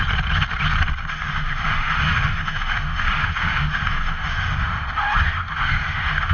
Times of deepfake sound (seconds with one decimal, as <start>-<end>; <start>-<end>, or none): 1.1-6.3